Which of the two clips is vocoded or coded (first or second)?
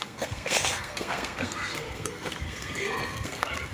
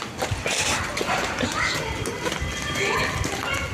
first